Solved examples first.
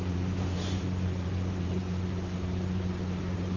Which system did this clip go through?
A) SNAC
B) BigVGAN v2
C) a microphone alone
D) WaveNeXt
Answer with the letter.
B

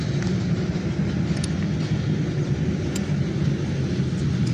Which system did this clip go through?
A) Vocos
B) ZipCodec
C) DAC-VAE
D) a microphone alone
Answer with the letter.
D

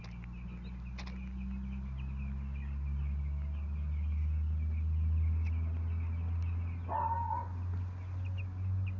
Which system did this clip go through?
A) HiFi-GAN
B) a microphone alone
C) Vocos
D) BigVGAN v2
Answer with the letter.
B